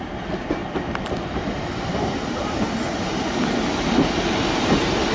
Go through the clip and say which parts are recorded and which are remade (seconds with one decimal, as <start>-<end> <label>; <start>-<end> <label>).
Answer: 0.0-5.1 recorded